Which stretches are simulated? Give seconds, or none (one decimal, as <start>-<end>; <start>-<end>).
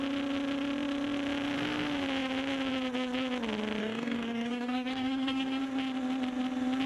3.8-5.6